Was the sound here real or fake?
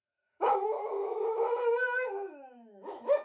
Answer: fake